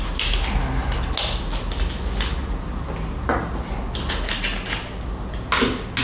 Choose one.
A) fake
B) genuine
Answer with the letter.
B